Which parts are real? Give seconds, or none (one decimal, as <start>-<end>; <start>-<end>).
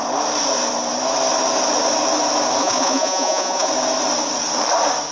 0.0-2.6; 3.7-5.1